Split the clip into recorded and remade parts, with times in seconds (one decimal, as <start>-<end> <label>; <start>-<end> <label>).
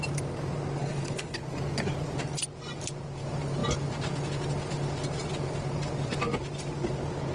0.0-0.8 recorded; 0.8-1.4 remade; 1.4-7.3 recorded